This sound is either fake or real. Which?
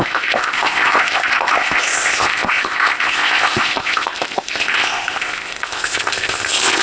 fake